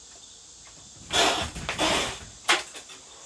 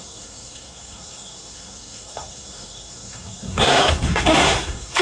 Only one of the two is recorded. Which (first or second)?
first